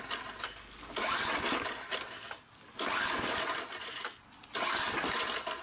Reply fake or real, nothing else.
real